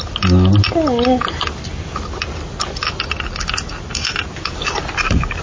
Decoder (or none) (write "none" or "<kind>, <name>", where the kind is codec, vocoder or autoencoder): none